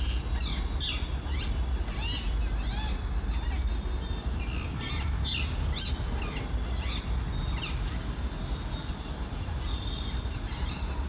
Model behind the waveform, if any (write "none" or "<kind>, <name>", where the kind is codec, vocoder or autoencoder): none